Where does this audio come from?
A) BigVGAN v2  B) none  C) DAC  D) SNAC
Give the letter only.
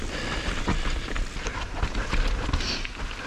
B